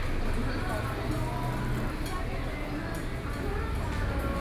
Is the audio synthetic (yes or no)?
no